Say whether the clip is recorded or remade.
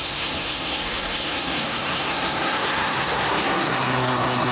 remade